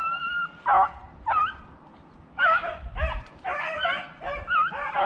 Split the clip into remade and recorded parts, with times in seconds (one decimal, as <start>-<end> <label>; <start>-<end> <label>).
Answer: 0.0-5.1 recorded